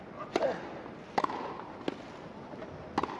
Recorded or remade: recorded